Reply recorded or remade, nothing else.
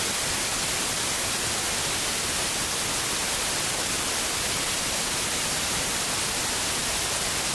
recorded